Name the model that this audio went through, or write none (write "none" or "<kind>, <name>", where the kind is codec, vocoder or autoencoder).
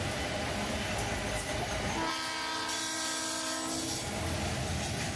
none